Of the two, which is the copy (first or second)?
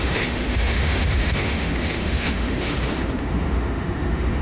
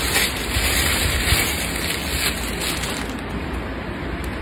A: first